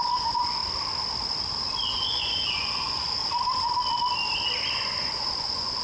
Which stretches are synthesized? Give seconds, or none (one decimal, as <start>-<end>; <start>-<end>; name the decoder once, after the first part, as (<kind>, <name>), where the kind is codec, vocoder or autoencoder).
0.0-0.6 (vocoder, Vocos); 1.9-3.2; 4.7-5.8